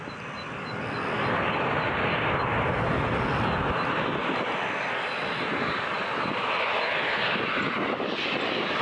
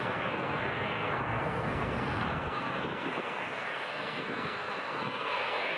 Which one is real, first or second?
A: first